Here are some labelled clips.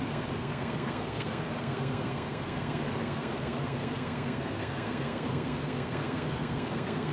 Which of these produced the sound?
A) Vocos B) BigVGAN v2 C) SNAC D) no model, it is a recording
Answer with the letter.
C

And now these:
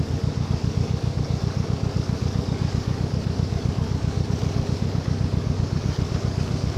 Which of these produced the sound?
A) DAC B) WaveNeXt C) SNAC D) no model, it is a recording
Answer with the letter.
A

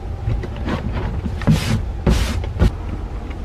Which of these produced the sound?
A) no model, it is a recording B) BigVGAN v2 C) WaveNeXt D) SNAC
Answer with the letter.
A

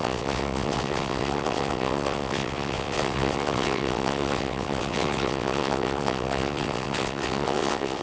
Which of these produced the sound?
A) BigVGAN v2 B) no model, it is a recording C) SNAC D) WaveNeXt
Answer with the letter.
D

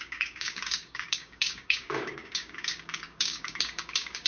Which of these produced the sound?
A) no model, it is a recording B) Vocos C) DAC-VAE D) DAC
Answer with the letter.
D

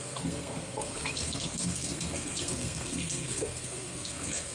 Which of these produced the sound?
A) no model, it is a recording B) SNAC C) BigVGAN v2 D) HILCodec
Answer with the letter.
B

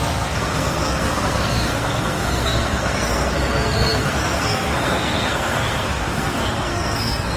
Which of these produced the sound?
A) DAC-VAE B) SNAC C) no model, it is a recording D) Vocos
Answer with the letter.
B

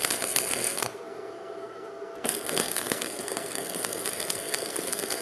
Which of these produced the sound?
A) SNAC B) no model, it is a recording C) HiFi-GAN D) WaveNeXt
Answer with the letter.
A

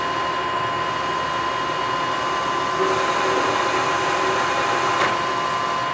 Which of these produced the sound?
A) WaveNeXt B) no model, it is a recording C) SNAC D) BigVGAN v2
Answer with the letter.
B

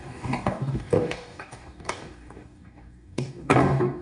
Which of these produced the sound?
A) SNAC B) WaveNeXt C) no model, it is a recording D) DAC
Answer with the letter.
D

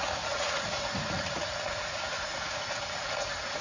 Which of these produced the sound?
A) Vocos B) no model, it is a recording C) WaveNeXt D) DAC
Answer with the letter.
A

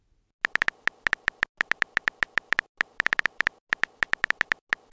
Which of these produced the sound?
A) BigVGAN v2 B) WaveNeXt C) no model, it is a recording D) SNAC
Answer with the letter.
C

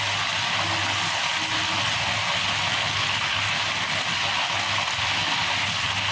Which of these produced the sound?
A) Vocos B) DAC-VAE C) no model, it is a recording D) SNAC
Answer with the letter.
C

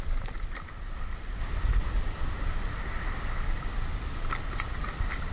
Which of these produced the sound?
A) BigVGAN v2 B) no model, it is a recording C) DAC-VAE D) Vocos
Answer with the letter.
B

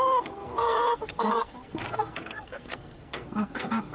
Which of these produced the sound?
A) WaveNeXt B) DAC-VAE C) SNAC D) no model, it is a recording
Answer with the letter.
C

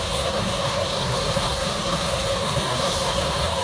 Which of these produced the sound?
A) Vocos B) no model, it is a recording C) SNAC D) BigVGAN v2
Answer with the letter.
C